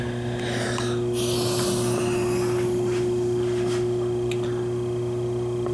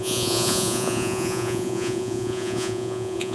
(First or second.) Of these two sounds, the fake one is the second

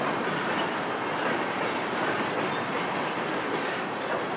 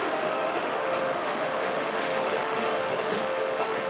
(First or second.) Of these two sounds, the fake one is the second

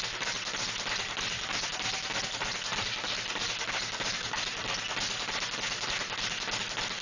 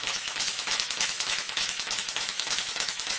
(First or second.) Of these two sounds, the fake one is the second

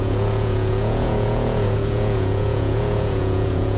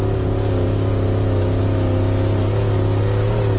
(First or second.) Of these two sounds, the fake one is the first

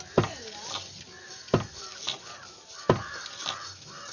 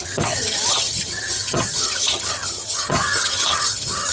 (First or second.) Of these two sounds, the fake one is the second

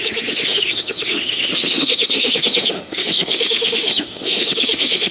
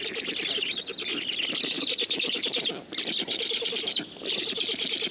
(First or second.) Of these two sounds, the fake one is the first